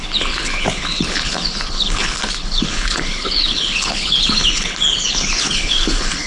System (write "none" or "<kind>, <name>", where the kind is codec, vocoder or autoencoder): codec, HILCodec